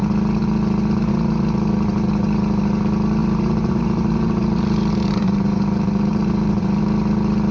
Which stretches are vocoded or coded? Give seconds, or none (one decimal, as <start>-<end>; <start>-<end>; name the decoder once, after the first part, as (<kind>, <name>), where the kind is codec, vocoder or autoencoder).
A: 3.2-6.8 (vocoder, BigVGAN v2)